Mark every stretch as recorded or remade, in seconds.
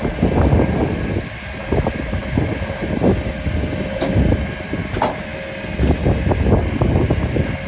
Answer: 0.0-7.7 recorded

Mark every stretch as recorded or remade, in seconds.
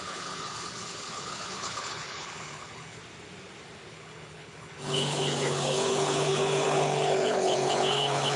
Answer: 0.0-3.0 remade; 3.0-3.9 recorded; 3.9-8.4 remade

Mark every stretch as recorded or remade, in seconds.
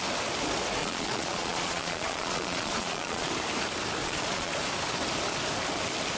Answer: 0.0-0.8 recorded; 0.8-3.3 remade; 3.3-4.0 recorded; 4.0-4.5 remade; 4.5-6.2 recorded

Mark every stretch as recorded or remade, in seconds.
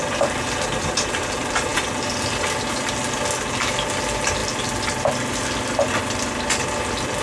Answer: 0.0-1.7 recorded; 1.7-2.5 remade; 2.5-4.4 recorded; 4.4-5.9 remade; 5.9-7.2 recorded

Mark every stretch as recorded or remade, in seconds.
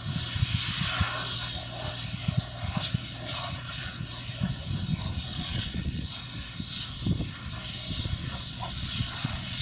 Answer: 0.0-3.3 recorded; 3.3-4.0 remade; 4.0-5.3 recorded; 5.3-6.2 remade; 6.2-8.2 recorded; 8.2-9.6 remade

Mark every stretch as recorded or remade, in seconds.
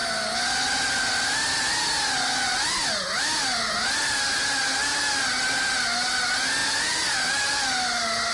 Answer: 0.0-8.3 recorded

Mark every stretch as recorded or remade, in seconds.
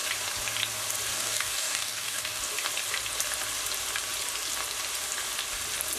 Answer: 0.0-1.1 recorded; 1.1-2.4 remade; 2.4-6.0 recorded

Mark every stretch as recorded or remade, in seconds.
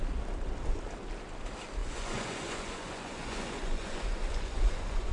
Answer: 0.0-1.8 recorded; 1.8-5.1 remade